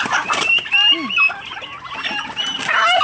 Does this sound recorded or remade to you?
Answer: recorded